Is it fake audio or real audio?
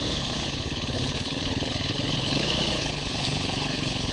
fake